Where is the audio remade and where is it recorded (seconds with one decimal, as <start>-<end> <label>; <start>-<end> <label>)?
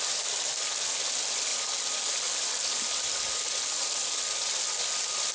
0.0-5.3 recorded